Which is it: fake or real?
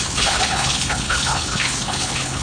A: fake